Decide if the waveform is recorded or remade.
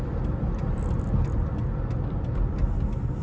recorded